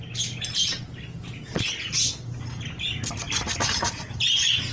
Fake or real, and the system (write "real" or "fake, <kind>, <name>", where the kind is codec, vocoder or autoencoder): real